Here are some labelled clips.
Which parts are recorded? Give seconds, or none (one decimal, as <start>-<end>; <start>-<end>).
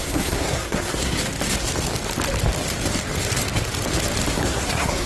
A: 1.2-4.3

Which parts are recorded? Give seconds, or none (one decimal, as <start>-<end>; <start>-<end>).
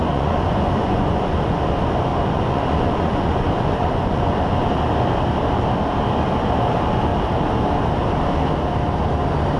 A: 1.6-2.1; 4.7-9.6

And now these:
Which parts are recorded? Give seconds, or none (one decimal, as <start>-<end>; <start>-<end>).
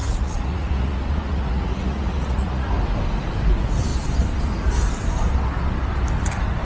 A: 2.7-6.6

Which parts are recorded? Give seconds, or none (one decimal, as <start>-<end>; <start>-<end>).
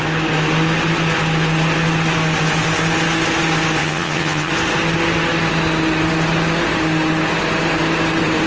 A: 0.0-3.8; 4.5-8.5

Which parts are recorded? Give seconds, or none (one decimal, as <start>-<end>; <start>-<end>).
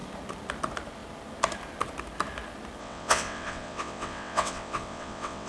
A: 0.0-2.8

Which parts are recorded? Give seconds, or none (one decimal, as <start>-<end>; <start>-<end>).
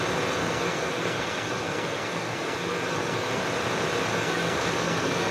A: 0.0-0.4; 3.4-4.1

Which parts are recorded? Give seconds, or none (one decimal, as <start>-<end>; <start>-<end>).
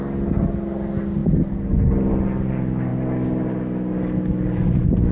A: 0.0-5.1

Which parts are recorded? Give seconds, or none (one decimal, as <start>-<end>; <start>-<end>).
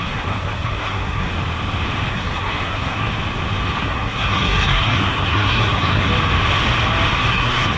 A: 1.3-2.1; 3.1-3.8; 6.1-7.3